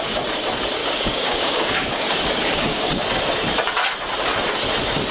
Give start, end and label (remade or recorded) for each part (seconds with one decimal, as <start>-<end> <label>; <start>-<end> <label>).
0.0-0.8 recorded; 0.8-2.9 remade; 2.9-5.1 recorded